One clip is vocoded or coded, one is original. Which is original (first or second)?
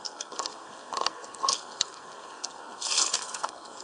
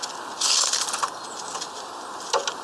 second